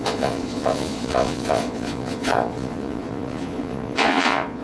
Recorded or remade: remade